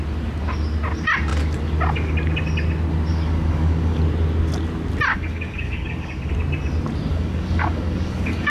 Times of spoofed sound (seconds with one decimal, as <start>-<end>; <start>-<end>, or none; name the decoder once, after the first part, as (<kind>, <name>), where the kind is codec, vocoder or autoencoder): 3.1-4.0 (codec, DAC); 5.1-6.3; 7.1-8.5